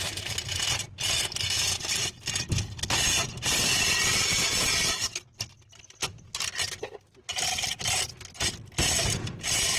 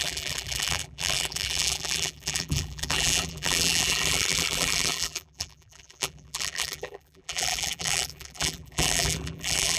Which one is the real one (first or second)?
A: first